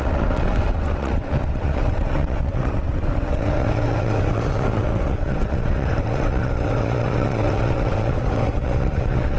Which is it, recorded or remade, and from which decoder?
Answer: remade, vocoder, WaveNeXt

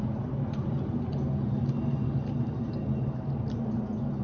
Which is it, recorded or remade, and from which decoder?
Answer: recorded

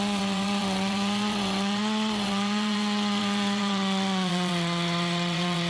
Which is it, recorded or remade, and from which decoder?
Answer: remade, vocoder, WaveNeXt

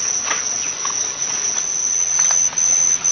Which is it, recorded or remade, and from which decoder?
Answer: remade, vocoder, WaveNeXt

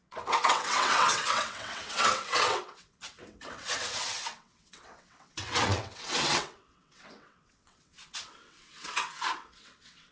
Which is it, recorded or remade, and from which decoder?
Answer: remade, vocoder, WaveNeXt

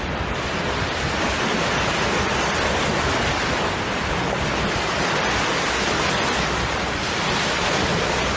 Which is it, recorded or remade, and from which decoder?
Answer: recorded